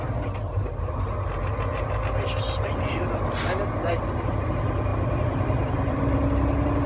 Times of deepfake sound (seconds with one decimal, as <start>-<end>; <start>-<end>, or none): 4.9-6.0